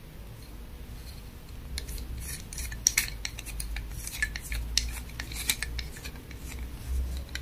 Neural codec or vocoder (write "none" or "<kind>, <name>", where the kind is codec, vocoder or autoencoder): none